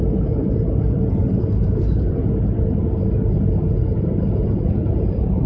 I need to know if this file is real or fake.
real